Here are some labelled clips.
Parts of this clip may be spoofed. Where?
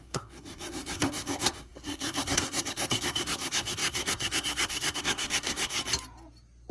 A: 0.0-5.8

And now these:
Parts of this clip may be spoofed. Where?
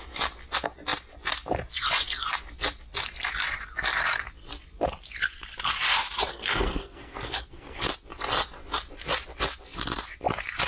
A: 6.3-7.8